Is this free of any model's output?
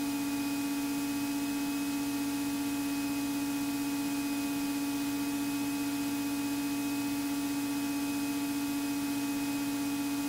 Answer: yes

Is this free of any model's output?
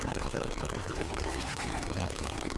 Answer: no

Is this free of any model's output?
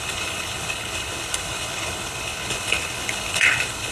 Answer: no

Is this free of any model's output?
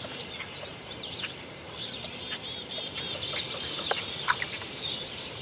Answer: no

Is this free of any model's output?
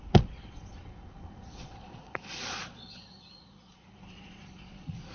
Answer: no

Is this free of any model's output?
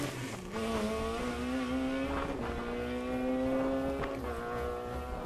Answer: yes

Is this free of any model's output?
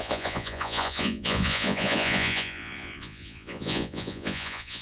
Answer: no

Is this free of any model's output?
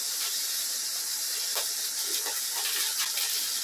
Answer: yes